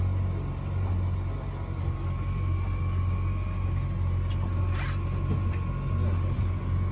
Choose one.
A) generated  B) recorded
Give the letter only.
B